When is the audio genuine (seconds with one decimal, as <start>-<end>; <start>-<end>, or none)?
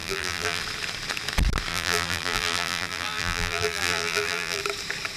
0.6-1.7; 4.6-5.2